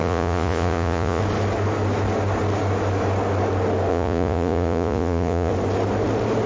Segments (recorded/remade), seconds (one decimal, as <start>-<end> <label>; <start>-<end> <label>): 0.0-1.2 remade; 1.2-3.9 recorded; 3.9-5.5 remade; 5.5-6.5 recorded